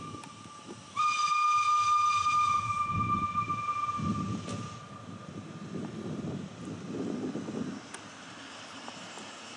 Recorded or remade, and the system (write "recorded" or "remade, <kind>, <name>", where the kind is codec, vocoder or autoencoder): recorded